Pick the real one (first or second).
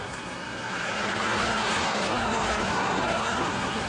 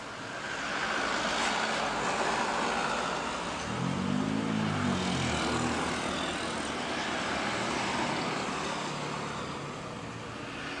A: second